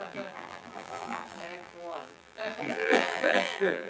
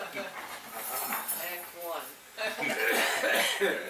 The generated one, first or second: first